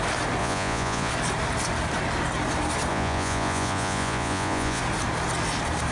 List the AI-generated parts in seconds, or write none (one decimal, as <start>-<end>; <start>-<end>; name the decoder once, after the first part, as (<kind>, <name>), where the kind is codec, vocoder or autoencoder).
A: 0.4-1.1 (vocoder, Vocos); 2.9-4.8